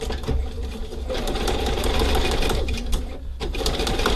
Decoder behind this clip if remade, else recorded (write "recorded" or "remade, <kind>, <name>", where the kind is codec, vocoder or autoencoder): remade, vocoder, BigVGAN v2